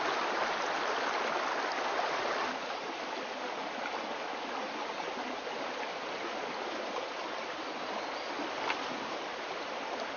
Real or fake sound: real